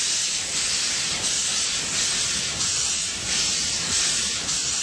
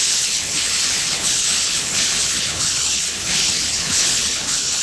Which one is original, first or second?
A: first